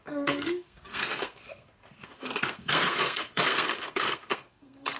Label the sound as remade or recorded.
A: remade